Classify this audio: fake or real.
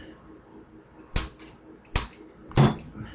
real